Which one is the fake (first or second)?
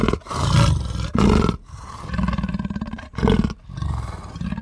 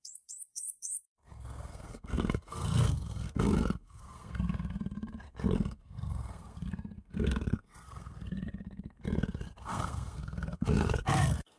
second